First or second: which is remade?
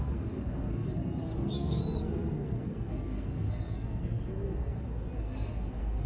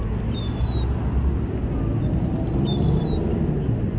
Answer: first